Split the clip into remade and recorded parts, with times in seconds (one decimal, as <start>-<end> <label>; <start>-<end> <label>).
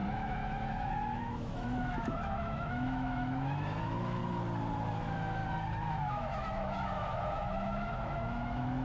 0.0-4.2 remade; 4.2-5.0 recorded; 5.0-5.4 remade; 5.4-5.9 recorded; 5.9-8.8 remade